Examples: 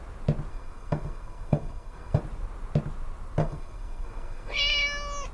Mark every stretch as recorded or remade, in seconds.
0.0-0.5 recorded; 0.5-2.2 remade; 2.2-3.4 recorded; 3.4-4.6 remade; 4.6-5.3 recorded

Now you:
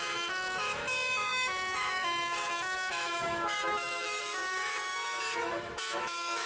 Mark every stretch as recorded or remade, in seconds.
0.0-6.5 remade

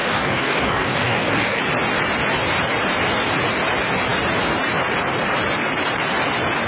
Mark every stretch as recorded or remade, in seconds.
0.0-1.6 remade; 1.6-6.7 recorded

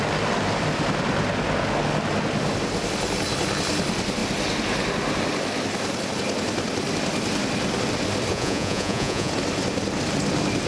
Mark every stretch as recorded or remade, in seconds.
0.0-8.3 recorded; 8.3-9.3 remade; 9.3-10.7 recorded

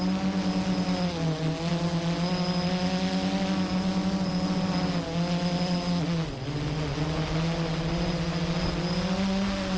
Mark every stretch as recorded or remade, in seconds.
0.0-9.8 recorded

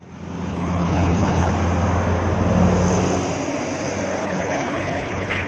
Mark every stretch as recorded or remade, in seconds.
0.0-0.5 recorded; 0.5-1.5 remade; 1.5-4.2 recorded; 4.2-5.5 remade

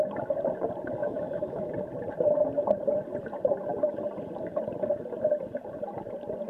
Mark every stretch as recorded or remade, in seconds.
0.0-1.0 recorded; 1.0-1.7 remade; 1.7-6.5 recorded